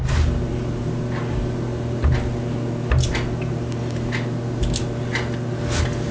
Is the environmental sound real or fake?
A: real